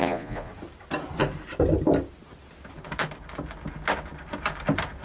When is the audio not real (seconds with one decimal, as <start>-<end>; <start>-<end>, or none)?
0.0-0.5